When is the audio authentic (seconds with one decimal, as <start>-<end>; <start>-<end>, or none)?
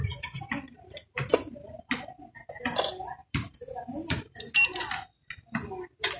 0.0-6.2